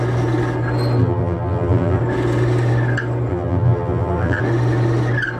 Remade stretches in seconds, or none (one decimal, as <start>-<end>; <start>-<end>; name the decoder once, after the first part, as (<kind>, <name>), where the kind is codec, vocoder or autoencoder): 1.0-2.0 (vocoder, BigVGAN v2); 3.3-4.4

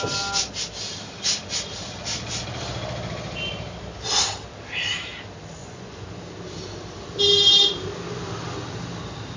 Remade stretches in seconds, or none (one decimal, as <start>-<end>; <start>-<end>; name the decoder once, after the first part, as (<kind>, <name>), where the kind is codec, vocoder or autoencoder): 5.6-6.2 (vocoder, Vocos)

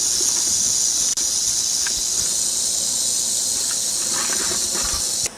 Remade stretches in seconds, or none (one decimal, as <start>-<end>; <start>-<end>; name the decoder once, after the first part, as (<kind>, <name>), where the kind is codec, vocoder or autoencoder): none

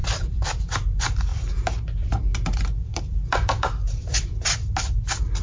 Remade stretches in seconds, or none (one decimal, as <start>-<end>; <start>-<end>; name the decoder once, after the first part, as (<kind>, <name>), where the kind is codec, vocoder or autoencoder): 0.0-1.3 (vocoder, BigVGAN v2); 2.8-4.3; 4.8-5.4

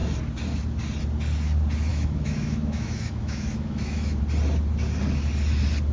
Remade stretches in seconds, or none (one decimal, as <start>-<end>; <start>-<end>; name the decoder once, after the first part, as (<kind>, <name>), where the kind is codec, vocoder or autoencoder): 1.9-4.2 (autoencoder, DAC-VAE)

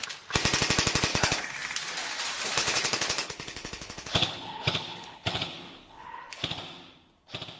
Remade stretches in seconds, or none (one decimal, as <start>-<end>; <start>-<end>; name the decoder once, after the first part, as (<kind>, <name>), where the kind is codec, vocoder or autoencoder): 1.1-1.6 (codec, HILCodec); 2.6-6.6

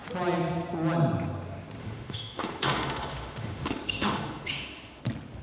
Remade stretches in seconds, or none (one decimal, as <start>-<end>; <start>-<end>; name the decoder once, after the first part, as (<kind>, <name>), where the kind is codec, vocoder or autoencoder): 1.8-5.0 (autoencoder, DAC-VAE)

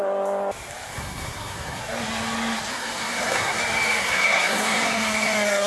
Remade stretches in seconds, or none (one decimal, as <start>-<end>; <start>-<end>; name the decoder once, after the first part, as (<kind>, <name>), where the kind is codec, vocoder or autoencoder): 0.9-1.8 (codec, SNAC); 2.7-3.6; 4.0-5.7